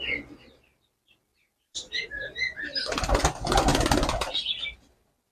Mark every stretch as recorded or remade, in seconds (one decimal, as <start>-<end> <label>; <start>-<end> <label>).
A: 0.0-1.3 recorded; 1.3-3.2 remade; 3.2-5.3 recorded